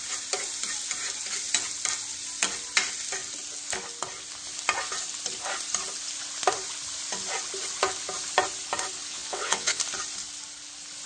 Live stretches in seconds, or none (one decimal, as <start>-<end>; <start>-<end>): 0.0-9.1; 9.8-11.1